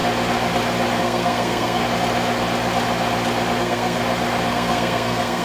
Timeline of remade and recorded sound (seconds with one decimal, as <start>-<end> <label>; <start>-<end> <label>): 0.0-1.0 recorded; 1.0-1.8 remade; 1.8-3.6 recorded; 3.6-4.0 remade; 4.0-4.5 recorded; 4.5-5.4 remade